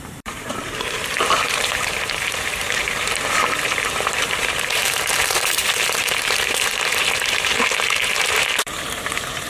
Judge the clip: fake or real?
fake